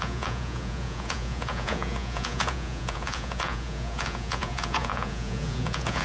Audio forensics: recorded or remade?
remade